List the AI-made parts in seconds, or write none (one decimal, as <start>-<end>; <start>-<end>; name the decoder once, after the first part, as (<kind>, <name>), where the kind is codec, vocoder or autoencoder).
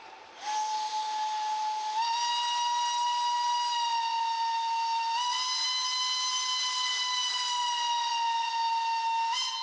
none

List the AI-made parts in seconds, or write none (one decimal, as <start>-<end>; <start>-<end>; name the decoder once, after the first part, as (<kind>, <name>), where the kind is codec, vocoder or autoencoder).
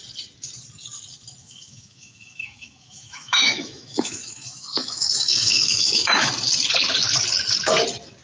1.4-6.3 (autoencoder, DAC-VAE)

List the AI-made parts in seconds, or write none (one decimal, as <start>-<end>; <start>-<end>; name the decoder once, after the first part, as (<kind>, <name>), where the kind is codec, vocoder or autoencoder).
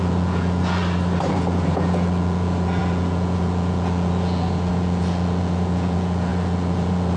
0.0-0.8 (vocoder, Vocos); 1.3-7.2